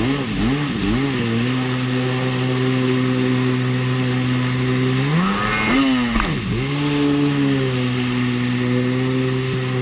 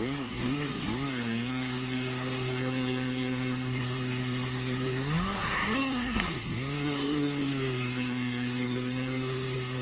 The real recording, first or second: first